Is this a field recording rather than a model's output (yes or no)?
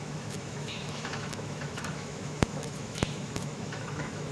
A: no